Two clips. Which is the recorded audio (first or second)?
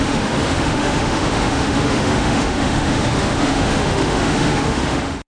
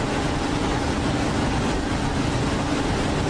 second